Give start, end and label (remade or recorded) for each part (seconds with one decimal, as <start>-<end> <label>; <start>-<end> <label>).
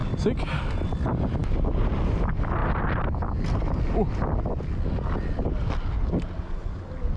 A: 0.0-7.2 recorded